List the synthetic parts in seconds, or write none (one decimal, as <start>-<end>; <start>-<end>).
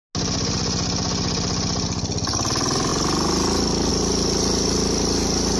none